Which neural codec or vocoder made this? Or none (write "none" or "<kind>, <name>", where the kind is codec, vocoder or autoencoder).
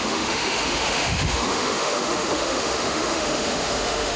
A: autoencoder, DAC-VAE